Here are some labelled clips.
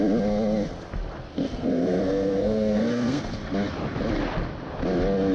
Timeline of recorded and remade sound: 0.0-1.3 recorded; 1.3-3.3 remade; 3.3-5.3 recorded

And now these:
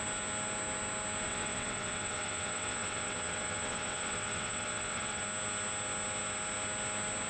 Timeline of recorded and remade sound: 0.0-1.3 recorded; 1.3-5.2 remade; 5.2-7.3 recorded

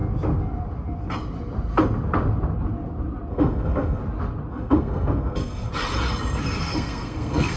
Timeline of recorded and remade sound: 0.0-3.3 recorded; 3.3-4.0 remade; 4.0-4.5 recorded; 4.5-5.7 remade; 5.7-6.6 recorded; 6.6-7.6 remade

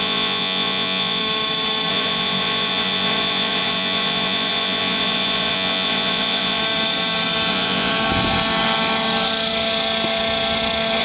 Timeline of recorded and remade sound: 0.0-1.2 remade; 1.2-1.9 recorded; 1.9-6.6 remade; 6.6-7.5 recorded; 7.5-7.9 remade; 7.9-11.0 recorded